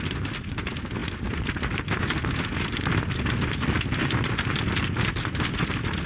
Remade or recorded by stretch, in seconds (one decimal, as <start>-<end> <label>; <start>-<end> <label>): 0.0-1.0 recorded; 1.0-2.0 remade; 2.0-4.0 recorded; 4.0-4.6 remade; 4.6-6.1 recorded